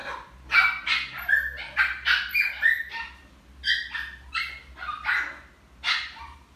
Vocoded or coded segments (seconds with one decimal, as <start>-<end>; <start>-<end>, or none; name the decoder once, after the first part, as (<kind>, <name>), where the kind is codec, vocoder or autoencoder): none